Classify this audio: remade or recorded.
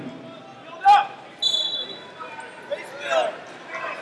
recorded